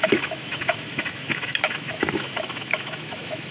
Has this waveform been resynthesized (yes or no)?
yes